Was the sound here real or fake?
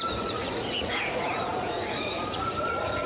fake